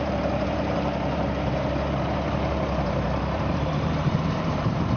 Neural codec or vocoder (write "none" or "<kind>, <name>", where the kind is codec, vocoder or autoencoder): vocoder, BigVGAN v2